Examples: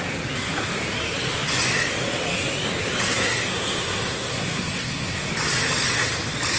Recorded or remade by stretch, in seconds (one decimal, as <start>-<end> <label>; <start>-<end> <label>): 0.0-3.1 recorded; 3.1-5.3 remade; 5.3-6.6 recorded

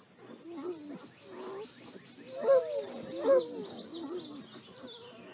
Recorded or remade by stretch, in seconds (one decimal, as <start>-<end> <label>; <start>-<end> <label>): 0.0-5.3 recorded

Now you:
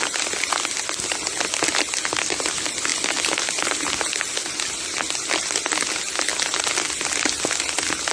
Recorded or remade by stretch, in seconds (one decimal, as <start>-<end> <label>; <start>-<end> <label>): 0.0-8.1 recorded